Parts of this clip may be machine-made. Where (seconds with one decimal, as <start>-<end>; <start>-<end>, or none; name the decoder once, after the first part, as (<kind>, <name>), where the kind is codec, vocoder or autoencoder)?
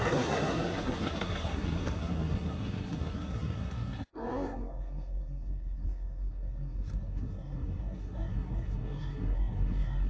0.0-10.1 (codec, SNAC)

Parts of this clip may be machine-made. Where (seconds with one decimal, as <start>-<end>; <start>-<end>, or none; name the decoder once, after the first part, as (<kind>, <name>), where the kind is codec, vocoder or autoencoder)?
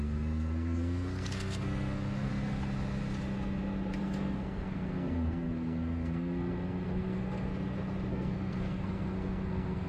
0.0-2.3 (codec, SNAC); 4.0-7.5; 8.1-9.9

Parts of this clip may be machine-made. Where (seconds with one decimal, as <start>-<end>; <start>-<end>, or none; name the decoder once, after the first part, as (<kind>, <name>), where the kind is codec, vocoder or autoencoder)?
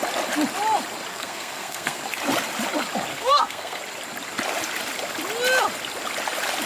1.1-2.0 (codec, SNAC); 3.1-3.8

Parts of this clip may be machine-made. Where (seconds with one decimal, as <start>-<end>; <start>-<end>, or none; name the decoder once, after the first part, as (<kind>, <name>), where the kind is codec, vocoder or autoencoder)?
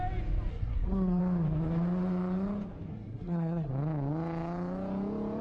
0.5-1.2 (codec, SNAC); 2.9-3.7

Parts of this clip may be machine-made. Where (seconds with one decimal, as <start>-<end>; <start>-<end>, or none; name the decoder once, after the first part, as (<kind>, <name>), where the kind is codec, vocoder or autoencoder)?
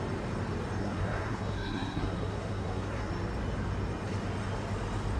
0.8-3.1 (codec, SNAC)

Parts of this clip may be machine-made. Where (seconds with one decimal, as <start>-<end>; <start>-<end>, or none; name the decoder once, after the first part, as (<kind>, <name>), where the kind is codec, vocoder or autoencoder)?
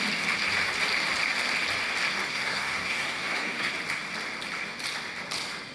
2.3-3.7 (codec, SNAC)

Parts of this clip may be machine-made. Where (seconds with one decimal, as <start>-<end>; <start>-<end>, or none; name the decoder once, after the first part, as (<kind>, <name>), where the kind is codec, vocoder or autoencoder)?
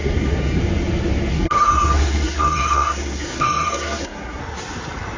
0.0-0.6 (codec, SNAC); 1.3-4.4